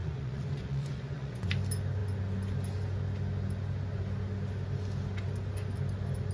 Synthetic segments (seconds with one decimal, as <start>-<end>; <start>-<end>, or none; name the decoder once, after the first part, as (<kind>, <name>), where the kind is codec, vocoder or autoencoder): 0.0-1.5 (vocoder, Vocos)